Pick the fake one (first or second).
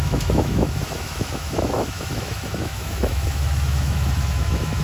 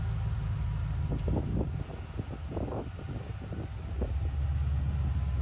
first